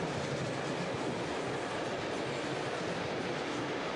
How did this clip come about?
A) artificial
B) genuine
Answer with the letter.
B